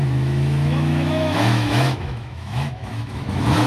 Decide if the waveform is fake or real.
fake